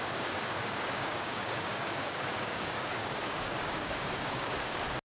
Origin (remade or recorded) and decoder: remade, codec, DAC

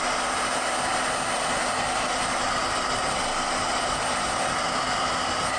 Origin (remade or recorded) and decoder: recorded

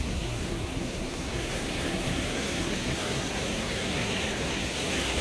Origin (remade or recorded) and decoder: remade, codec, SNAC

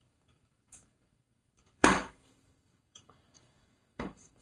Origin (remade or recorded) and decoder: remade, codec, DAC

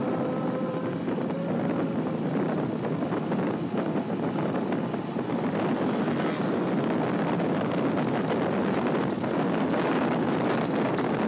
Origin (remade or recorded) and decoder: recorded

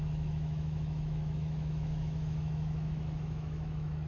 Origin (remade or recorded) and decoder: remade, autoencoder, DAC-VAE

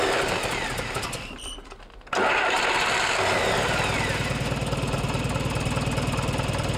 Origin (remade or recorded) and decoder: recorded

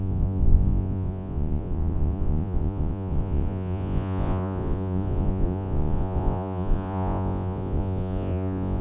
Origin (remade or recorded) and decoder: remade, vocoder, Vocos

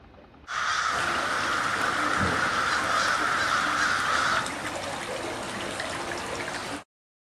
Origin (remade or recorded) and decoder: recorded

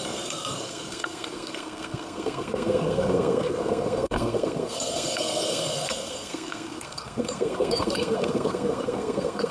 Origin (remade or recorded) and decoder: remade, codec, SNAC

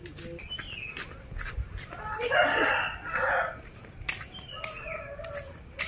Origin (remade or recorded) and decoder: recorded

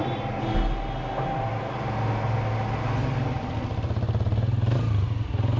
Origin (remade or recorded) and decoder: recorded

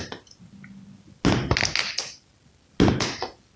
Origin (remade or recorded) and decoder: recorded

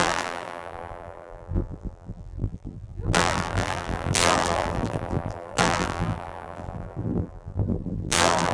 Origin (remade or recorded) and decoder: remade, vocoder, BigVGAN v2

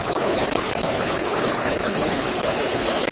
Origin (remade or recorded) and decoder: remade, codec, HILCodec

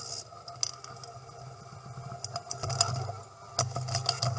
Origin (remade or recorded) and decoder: recorded